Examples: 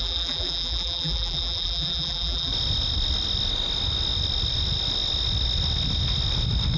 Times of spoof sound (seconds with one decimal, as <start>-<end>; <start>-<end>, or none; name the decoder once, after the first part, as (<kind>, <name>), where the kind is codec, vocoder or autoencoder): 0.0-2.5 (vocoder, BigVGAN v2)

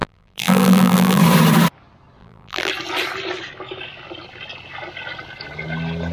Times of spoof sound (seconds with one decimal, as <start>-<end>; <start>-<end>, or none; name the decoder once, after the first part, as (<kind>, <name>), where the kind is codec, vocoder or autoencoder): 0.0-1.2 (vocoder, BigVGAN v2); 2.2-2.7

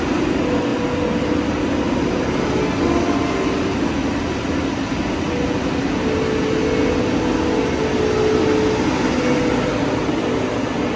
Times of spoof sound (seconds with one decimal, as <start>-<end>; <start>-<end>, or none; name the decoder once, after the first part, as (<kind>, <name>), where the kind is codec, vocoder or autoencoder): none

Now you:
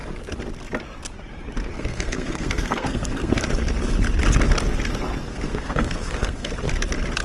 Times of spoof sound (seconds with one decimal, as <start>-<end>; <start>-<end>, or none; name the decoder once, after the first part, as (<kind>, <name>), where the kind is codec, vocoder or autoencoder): 1.7-3.3 (codec, SNAC); 5.3-6.5

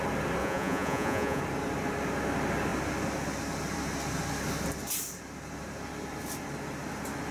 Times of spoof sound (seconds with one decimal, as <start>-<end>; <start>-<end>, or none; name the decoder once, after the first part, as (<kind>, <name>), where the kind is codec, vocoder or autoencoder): 0.4-1.4 (vocoder, Vocos)